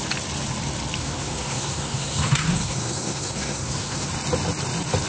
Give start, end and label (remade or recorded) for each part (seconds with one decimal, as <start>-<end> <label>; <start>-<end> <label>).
0.0-1.0 recorded; 1.0-4.1 remade; 4.1-5.1 recorded